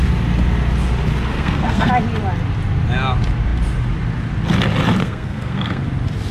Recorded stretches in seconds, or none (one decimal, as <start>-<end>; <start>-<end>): 0.0-1.3; 1.9-5.0; 5.8-6.3